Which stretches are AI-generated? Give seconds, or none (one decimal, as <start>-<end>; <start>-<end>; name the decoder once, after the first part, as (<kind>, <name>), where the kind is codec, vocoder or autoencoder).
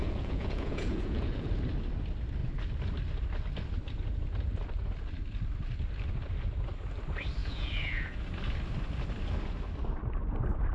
0.0-1.5 (vocoder, Vocos); 7.4-8.2